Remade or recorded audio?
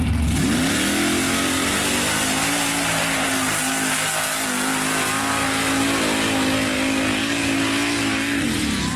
recorded